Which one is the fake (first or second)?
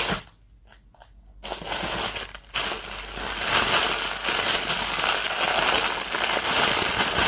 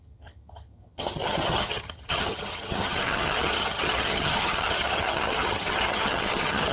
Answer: second